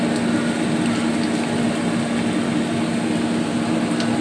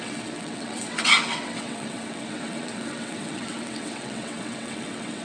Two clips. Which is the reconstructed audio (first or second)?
second